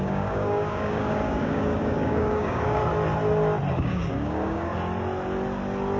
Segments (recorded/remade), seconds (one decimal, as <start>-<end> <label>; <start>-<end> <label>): 0.0-2.8 remade; 2.8-3.7 recorded; 3.7-4.7 remade; 4.7-6.0 recorded